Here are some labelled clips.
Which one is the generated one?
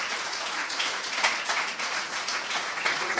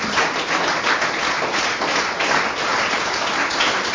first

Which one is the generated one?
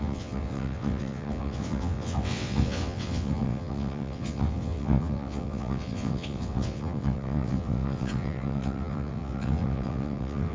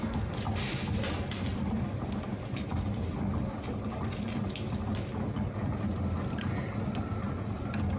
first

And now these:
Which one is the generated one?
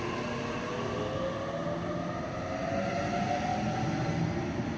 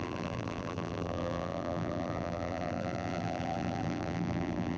second